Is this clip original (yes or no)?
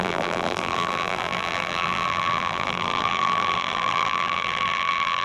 no